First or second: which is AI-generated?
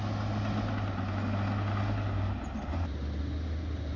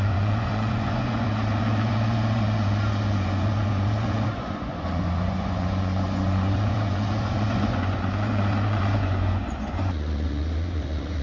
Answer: second